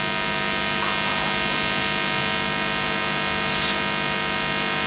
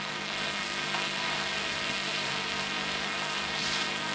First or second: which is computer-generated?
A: second